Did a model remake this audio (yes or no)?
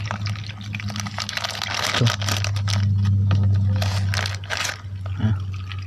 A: no